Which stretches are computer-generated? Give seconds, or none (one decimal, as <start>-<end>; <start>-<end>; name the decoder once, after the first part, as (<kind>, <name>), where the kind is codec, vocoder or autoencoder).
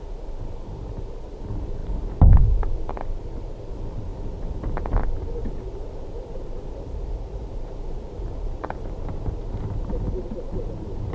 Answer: 4.1-4.9 (vocoder, BigVGAN v2); 5.4-10.1